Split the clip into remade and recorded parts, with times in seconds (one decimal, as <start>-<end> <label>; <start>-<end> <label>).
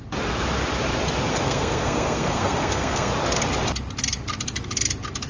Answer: 0.0-1.3 recorded; 1.3-3.1 remade; 3.1-5.3 recorded